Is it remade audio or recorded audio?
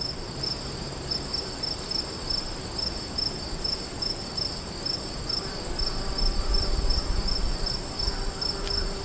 recorded